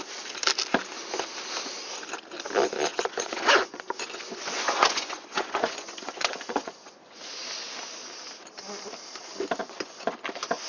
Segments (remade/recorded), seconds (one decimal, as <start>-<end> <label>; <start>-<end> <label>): 0.0-2.9 recorded; 2.9-7.3 remade; 7.3-9.6 recorded; 9.6-10.1 remade; 10.1-10.7 recorded